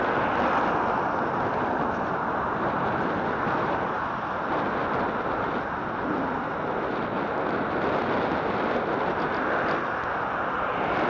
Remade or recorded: recorded